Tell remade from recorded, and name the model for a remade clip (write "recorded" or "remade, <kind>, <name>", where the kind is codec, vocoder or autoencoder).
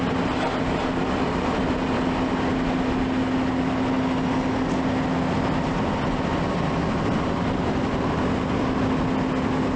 recorded